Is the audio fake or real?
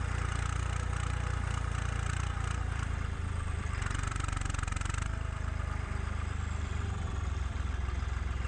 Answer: fake